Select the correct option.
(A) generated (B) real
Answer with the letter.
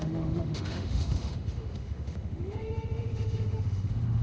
A